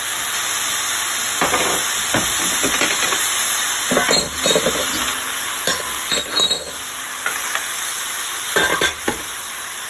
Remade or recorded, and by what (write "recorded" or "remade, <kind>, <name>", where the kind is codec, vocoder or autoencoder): recorded